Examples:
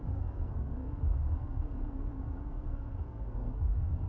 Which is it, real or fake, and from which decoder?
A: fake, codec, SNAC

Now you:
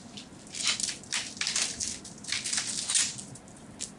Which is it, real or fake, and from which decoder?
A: real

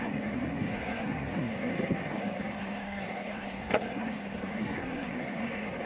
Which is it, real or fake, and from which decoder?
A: fake, codec, SNAC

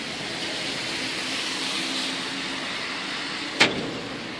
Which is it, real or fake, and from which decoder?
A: real